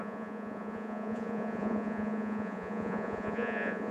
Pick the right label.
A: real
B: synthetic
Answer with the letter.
B